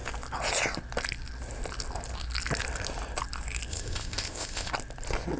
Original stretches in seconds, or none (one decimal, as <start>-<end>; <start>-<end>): 0.0-3.7; 4.7-5.4